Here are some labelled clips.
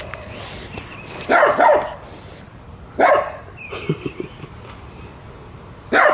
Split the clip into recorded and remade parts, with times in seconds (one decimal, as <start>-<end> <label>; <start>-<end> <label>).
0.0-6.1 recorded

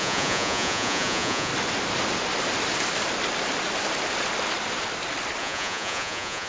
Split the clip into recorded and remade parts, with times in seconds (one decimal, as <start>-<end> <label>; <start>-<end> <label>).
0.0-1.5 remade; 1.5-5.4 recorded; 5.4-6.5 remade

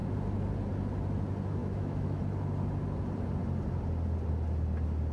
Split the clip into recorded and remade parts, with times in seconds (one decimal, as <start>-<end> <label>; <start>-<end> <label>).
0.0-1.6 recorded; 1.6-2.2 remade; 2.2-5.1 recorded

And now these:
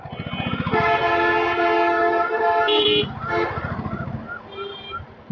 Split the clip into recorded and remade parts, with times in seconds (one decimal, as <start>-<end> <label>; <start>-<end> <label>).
0.0-5.3 recorded